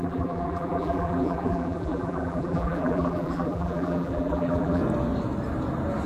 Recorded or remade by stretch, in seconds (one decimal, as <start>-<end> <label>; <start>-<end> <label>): 0.0-4.8 remade; 4.8-6.1 recorded